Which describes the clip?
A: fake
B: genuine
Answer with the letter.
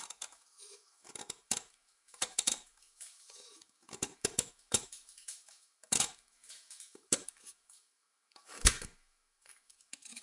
A